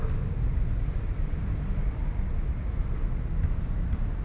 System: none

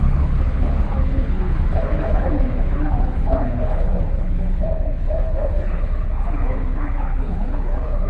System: codec, HILCodec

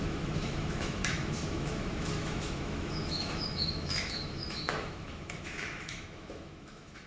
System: autoencoder, DAC-VAE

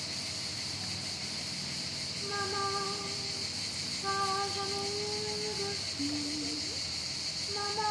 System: none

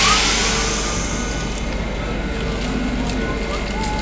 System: none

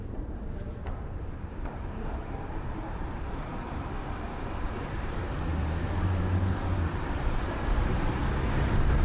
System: vocoder, BigVGAN v2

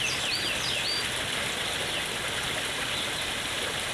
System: none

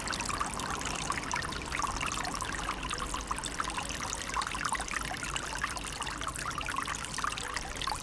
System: none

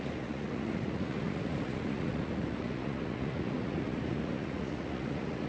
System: vocoder, Vocos